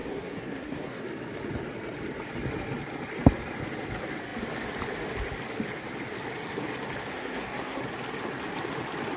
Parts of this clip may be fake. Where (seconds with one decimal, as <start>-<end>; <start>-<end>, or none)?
0.0-1.0; 7.1-7.8